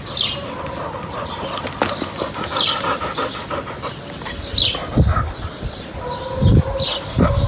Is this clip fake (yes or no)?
no